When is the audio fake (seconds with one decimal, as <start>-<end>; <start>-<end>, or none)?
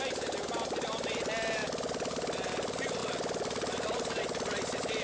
none